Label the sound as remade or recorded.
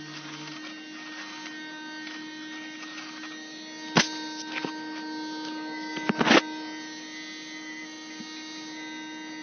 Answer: recorded